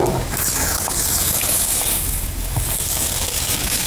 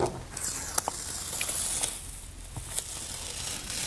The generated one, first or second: first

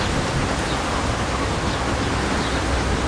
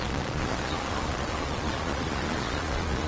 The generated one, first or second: second